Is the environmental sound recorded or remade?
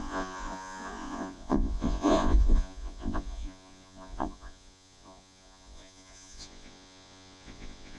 remade